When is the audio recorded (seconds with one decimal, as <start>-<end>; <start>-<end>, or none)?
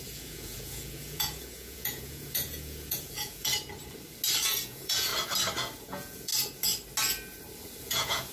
3.5-4.6; 5.1-5.8; 6.3-7.8